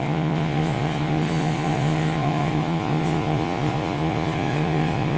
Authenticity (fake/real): fake